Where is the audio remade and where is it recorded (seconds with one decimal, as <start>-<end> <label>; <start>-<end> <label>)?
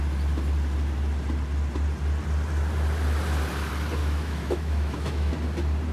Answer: 0.0-4.0 recorded; 4.0-5.3 remade; 5.3-5.9 recorded